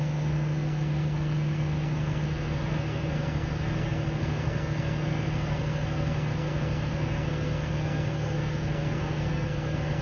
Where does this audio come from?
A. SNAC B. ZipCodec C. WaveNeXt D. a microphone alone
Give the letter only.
A